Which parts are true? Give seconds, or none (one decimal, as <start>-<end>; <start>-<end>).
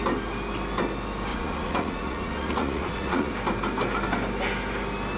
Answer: 0.0-1.3; 3.3-5.2